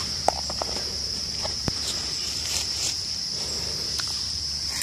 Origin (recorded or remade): remade